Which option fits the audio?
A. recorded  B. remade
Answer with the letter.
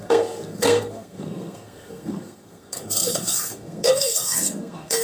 B